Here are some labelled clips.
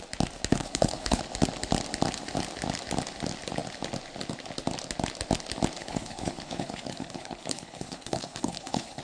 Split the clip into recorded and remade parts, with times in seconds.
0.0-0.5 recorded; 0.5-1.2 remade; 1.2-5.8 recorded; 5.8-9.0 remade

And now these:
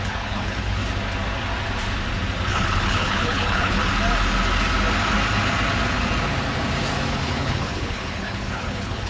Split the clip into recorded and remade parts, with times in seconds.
0.0-0.8 remade; 0.8-2.5 recorded; 2.5-3.8 remade; 3.8-7.1 recorded; 7.1-9.1 remade

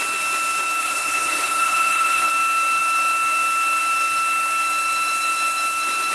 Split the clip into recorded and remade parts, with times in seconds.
0.0-0.8 recorded; 0.8-2.3 remade; 2.3-6.1 recorded

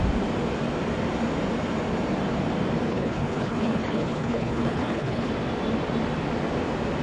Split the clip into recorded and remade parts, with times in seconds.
0.0-2.9 recorded; 2.9-5.3 remade; 5.3-7.0 recorded

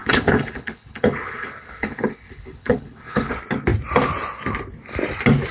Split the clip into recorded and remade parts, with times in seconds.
0.0-3.3 remade; 3.3-5.5 recorded

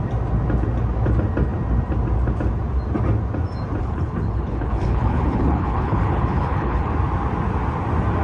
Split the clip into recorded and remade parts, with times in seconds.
0.0-3.8 recorded; 3.8-6.9 remade; 6.9-8.2 recorded

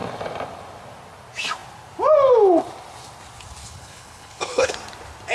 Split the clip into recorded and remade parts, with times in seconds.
0.0-3.6 recorded; 3.6-4.7 remade; 4.7-5.3 recorded

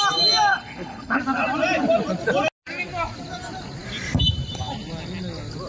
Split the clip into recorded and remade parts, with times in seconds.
0.0-0.5 recorded; 0.5-1.2 remade; 1.2-5.7 recorded